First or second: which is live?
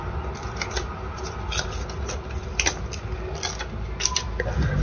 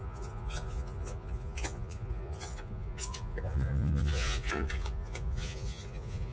first